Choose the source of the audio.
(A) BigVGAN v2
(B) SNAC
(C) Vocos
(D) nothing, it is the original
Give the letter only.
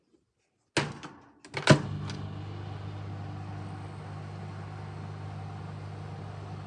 D